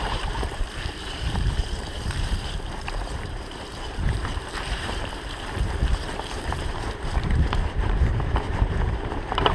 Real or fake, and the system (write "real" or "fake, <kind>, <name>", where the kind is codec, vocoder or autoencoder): fake, vocoder, BigVGAN v2